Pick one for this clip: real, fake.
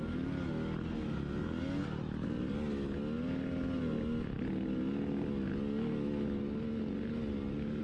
real